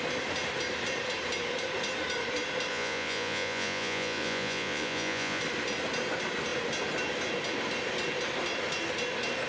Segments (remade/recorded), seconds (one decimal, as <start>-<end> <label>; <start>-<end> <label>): 0.0-2.7 recorded; 2.7-5.4 remade; 5.4-9.5 recorded